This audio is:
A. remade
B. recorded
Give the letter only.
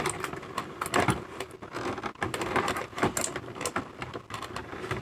B